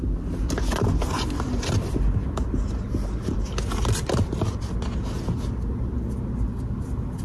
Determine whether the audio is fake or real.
real